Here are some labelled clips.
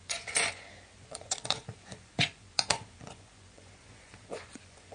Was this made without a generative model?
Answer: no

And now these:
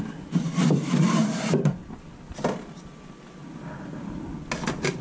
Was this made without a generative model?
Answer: yes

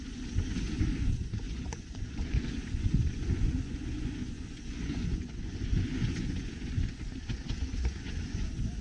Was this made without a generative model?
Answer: no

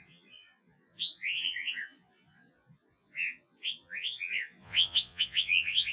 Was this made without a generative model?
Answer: no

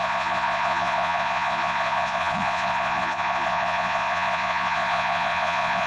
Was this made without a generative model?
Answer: no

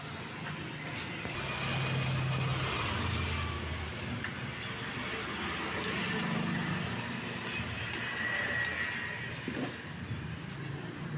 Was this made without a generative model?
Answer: yes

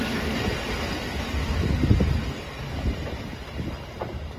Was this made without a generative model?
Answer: yes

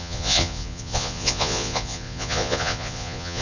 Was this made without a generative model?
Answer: no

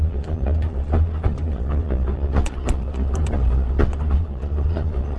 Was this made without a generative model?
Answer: no